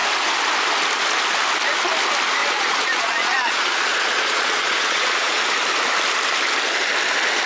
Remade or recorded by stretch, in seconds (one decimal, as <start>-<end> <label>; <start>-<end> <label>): 0.0-2.4 recorded; 2.4-5.4 remade; 5.4-7.5 recorded